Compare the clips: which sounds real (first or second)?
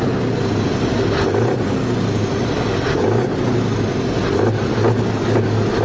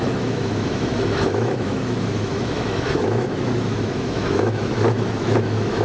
first